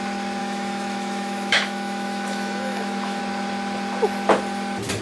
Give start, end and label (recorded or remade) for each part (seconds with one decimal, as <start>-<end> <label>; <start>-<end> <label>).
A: 0.0-0.4 recorded; 0.4-3.2 remade; 3.2-5.0 recorded